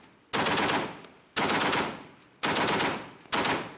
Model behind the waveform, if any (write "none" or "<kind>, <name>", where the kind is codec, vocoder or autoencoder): none